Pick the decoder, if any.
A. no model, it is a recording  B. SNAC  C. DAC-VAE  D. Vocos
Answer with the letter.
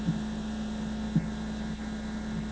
A